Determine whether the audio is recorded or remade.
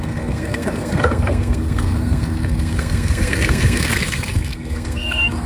remade